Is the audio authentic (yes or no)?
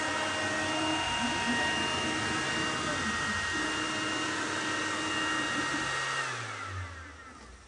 yes